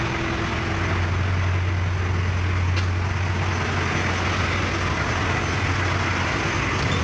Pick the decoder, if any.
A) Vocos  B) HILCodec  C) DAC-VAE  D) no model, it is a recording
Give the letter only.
D